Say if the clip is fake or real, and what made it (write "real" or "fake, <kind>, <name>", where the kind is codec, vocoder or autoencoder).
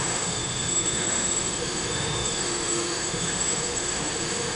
fake, autoencoder, DAC-VAE